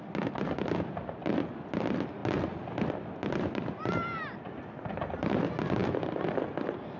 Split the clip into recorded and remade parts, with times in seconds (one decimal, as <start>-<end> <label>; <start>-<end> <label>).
0.0-7.0 recorded